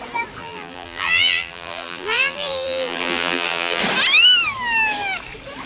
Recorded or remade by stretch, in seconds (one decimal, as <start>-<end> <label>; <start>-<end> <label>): 0.0-0.4 recorded; 0.4-3.8 remade; 3.8-5.7 recorded